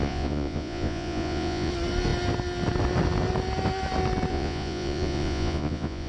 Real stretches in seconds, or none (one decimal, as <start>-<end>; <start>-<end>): 1.7-4.3

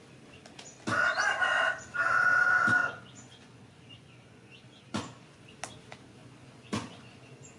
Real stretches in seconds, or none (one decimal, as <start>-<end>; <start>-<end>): 0.0-2.8; 5.4-6.2